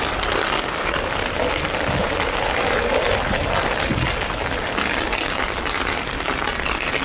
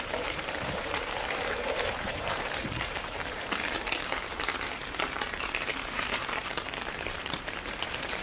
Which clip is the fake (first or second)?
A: second